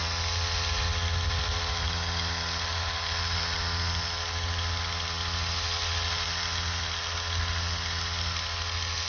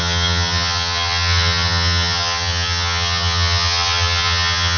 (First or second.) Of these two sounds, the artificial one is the second